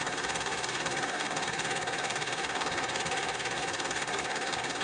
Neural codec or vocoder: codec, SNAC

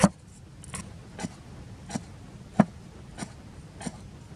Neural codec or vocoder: none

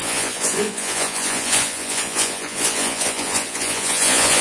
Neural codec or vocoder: vocoder, Vocos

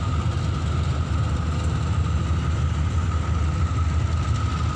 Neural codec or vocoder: none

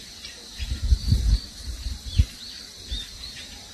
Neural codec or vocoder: none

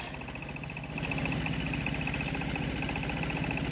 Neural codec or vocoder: none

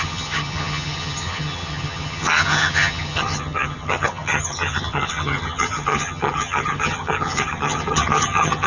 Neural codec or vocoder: vocoder, HiFi-GAN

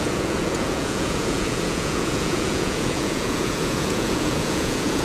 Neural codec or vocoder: vocoder, Vocos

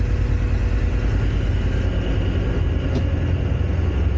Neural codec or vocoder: none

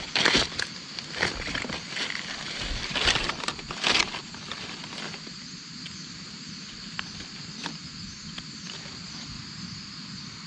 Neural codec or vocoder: none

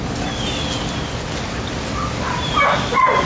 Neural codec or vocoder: none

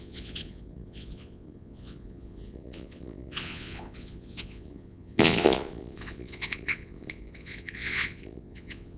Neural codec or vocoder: vocoder, Vocos